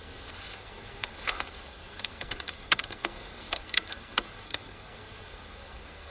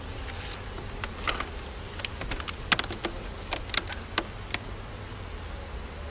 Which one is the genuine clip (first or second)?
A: second